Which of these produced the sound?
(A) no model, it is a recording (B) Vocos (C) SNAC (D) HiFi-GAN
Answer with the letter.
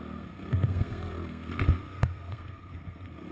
C